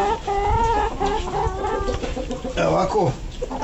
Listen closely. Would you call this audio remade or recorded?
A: recorded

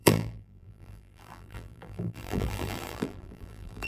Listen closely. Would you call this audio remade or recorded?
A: remade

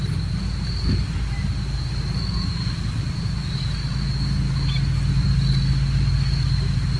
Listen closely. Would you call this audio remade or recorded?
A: recorded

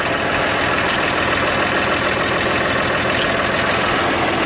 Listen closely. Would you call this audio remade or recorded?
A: recorded